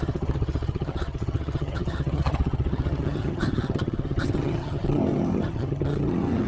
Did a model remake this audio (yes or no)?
yes